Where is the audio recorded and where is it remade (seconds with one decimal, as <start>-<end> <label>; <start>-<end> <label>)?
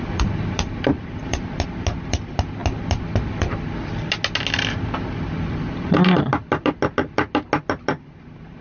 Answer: 0.0-8.6 recorded